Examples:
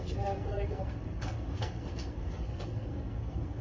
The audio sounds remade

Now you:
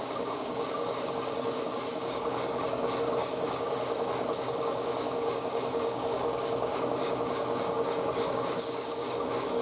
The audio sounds remade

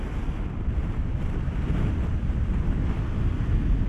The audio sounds recorded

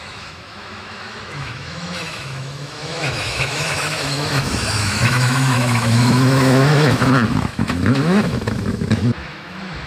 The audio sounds remade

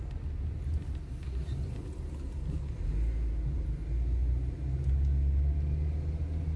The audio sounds recorded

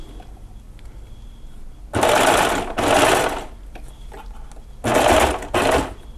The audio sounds recorded